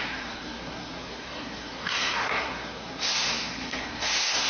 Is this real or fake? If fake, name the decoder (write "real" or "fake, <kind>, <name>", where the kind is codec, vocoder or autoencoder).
fake, codec, SNAC